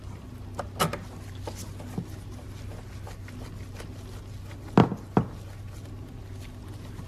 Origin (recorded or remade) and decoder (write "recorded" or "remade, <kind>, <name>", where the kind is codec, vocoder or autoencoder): recorded